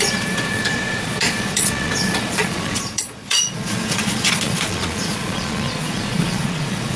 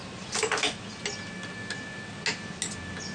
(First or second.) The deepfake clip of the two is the first